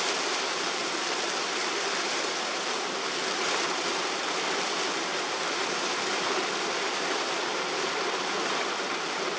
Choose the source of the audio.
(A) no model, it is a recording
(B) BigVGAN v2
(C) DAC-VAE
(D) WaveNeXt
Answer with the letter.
B